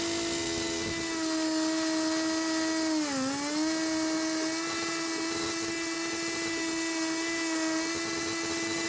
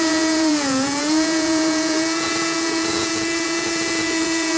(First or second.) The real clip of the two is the first